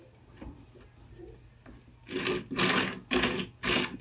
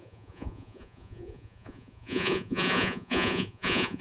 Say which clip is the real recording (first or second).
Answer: first